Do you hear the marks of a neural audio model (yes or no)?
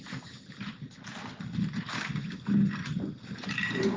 no